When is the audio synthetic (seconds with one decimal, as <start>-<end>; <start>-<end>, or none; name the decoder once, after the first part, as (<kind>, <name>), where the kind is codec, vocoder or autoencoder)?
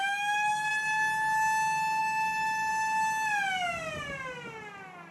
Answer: 0.0-0.7 (autoencoder, DAC-VAE); 2.0-2.7